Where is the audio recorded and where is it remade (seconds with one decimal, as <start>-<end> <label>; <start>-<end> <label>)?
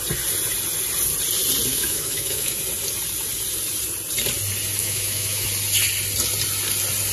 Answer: 0.0-1.7 recorded; 1.7-2.6 remade; 2.6-4.8 recorded; 4.8-5.5 remade; 5.5-7.1 recorded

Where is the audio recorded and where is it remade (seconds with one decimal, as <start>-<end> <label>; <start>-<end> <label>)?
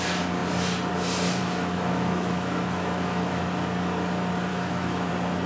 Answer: 0.0-1.4 recorded; 1.4-3.4 remade; 3.4-4.5 recorded; 4.5-5.1 remade; 5.1-5.5 recorded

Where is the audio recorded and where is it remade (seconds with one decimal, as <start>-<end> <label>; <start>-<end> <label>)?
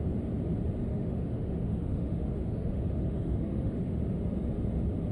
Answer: 0.0-0.9 recorded; 0.9-4.0 remade; 4.0-5.1 recorded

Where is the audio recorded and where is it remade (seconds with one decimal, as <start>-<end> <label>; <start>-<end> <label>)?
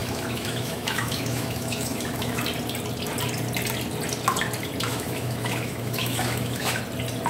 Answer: 0.0-2.4 remade; 2.4-4.9 recorded; 4.9-6.8 remade; 6.8-7.3 recorded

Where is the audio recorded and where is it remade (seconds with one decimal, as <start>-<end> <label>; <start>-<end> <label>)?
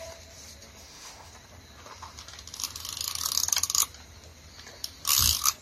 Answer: 0.0-0.8 recorded; 0.8-1.3 remade; 1.3-5.6 recorded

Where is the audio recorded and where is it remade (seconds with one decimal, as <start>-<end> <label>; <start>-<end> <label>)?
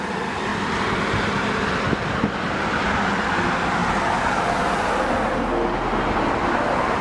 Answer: 0.0-7.0 recorded